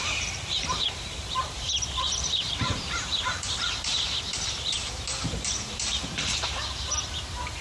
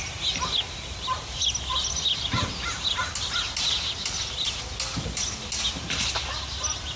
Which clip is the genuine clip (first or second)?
second